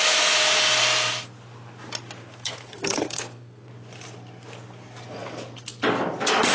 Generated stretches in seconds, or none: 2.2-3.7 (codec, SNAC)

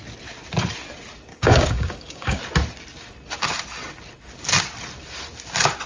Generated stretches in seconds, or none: 1.3-2.4 (codec, DAC)

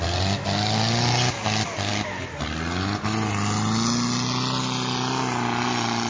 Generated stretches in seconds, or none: none